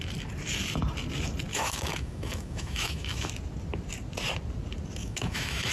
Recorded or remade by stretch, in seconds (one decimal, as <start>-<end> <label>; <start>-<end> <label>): 0.0-1.5 recorded; 1.5-3.3 remade; 3.3-5.0 recorded; 5.0-5.7 remade